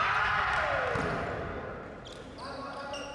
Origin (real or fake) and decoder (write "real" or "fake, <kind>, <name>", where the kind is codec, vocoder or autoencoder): real